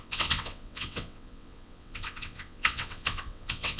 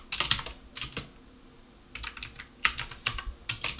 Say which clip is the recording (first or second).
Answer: second